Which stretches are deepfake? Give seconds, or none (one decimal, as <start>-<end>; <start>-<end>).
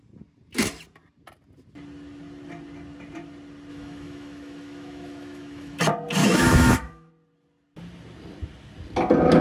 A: 3.7-5.8; 6.2-7.1